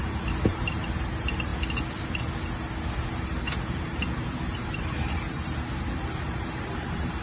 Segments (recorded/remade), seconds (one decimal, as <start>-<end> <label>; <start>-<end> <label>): 0.0-0.5 recorded; 0.5-1.5 remade; 1.5-2.8 recorded; 2.8-7.2 remade